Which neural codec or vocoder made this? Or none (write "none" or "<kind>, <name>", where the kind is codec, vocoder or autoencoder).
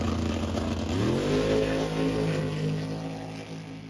none